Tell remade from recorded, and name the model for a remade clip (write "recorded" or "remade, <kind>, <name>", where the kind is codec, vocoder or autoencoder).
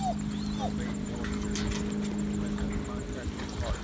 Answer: recorded